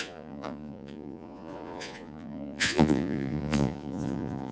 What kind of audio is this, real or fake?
fake